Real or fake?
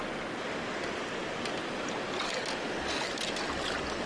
real